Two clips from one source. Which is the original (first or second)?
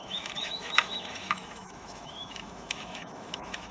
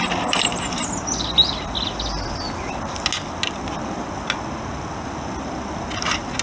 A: second